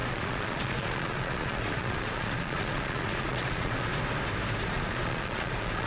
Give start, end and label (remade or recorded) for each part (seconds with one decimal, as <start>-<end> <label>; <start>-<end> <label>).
0.0-3.9 remade; 3.9-4.6 recorded; 4.6-5.9 remade